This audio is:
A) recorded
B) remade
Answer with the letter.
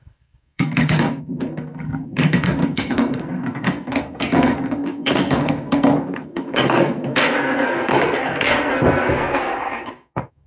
B